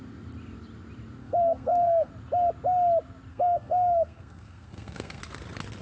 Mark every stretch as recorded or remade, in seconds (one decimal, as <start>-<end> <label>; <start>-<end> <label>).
0.0-1.2 recorded; 1.2-2.1 remade; 2.1-3.3 recorded; 3.3-5.2 remade; 5.2-5.8 recorded